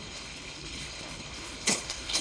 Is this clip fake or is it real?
fake